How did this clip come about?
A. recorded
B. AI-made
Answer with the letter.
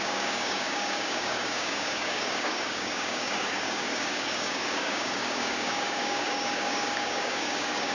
B